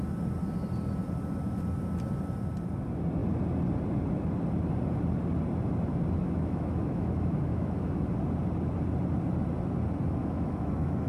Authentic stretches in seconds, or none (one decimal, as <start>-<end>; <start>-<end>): 0.0-6.2; 8.1-10.2